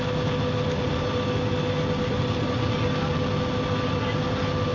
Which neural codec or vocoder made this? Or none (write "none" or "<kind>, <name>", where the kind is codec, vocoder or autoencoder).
none